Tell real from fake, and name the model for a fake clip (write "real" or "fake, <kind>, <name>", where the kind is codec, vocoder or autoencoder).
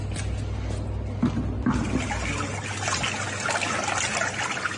real